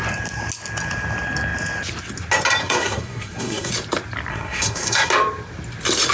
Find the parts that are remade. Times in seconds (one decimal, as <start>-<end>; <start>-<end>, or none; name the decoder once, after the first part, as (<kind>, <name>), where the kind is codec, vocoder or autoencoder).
2.6-3.7 (codec, SNAC); 4.3-5.1